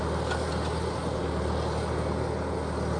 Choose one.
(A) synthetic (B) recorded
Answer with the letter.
B